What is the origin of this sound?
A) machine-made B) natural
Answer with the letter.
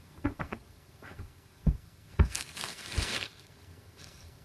A